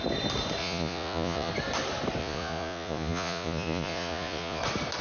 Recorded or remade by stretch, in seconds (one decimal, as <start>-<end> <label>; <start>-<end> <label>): 0.0-0.6 recorded; 0.6-1.5 remade; 1.5-2.2 recorded; 2.2-4.6 remade; 4.6-5.0 recorded